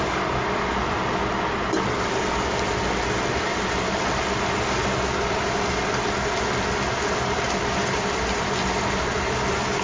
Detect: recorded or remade recorded